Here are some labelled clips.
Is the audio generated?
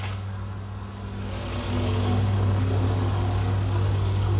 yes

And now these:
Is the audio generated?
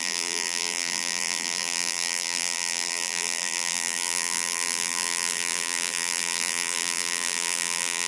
yes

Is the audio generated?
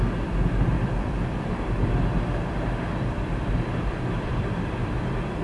yes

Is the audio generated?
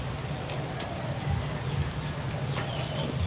no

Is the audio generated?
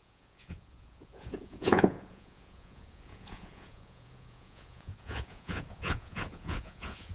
yes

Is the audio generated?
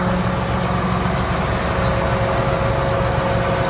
no